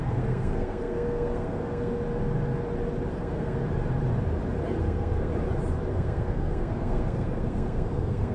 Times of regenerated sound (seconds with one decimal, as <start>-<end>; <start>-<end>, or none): 0.0-1.9; 3.1-3.6; 4.8-5.3; 5.9-8.3

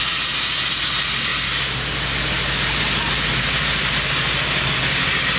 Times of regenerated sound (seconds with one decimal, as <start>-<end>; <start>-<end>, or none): none

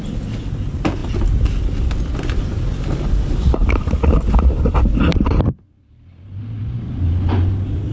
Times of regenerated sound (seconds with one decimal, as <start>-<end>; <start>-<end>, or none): none

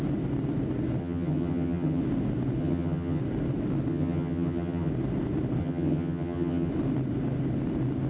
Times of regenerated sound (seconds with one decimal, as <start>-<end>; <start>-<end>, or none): 1.0-2.0; 2.6-3.2; 3.9-4.9; 5.6-6.7

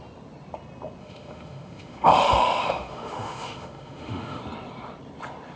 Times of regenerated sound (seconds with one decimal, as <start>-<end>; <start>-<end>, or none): 1.0-4.4

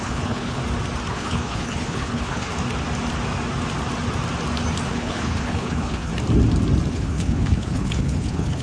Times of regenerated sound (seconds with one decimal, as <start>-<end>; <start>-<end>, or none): 0.0-0.6; 1.1-2.5; 4.9-6.1; 6.9-8.6

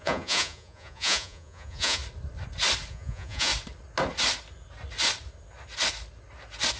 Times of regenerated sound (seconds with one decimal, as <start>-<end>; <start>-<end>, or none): 0.0-2.0; 2.9-3.5